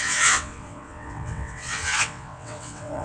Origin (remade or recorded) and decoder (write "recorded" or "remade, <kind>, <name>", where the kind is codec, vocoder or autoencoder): remade, vocoder, WaveNeXt